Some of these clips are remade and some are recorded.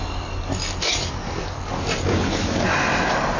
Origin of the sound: recorded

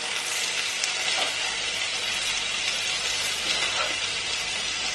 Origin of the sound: recorded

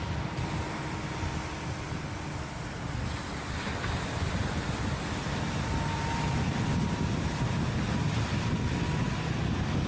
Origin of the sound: recorded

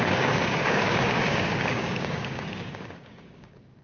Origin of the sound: remade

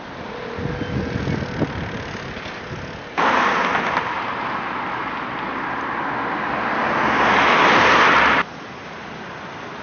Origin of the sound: recorded